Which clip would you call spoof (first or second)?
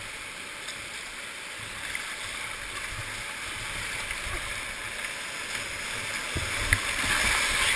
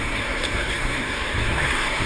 second